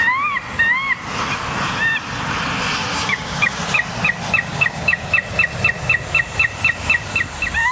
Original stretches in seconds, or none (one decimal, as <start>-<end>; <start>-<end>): 0.0-2.9; 3.6-4.5; 5.1-7.7